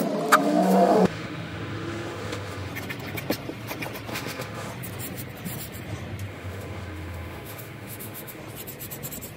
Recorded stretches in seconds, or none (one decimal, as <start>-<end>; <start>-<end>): 0.0-0.4; 2.7-4.1; 4.7-6.3; 8.4-9.4